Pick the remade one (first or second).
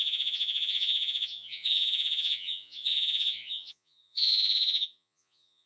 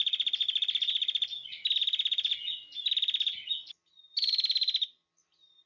first